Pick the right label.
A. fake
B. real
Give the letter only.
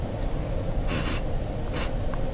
B